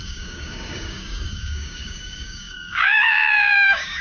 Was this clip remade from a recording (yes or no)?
yes